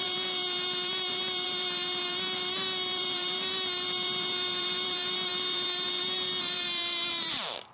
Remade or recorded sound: remade